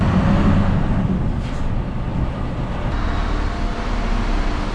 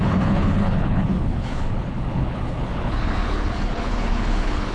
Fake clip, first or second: second